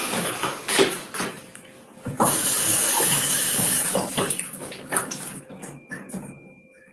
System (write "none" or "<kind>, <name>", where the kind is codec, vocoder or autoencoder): codec, DAC